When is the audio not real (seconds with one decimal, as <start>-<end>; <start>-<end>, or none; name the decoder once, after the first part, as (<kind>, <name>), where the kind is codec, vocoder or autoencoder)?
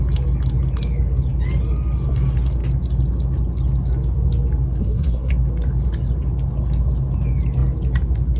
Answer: 4.8-5.3 (codec, SNAC)